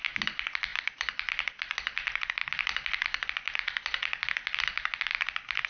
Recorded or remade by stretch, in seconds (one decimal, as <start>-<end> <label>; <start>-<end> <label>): 0.0-5.7 recorded